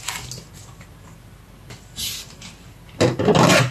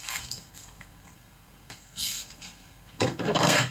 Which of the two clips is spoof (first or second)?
second